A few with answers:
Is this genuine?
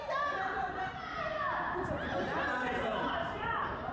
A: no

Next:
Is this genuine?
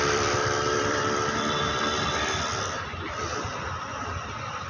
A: no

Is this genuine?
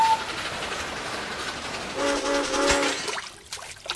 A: yes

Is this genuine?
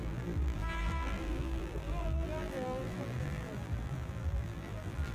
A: no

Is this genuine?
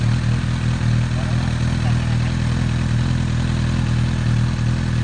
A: yes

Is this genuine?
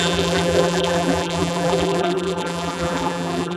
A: no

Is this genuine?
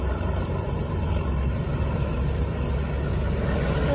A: no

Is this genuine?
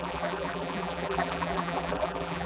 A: no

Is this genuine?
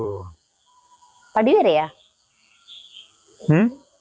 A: no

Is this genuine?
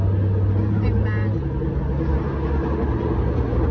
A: yes